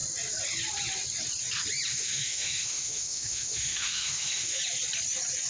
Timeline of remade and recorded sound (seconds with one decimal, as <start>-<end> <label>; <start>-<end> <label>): 0.0-1.9 recorded; 1.9-4.6 remade; 4.6-5.5 recorded